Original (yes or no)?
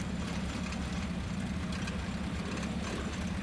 no